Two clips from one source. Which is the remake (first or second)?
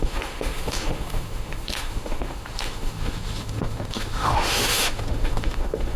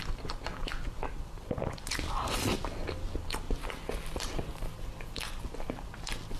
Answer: first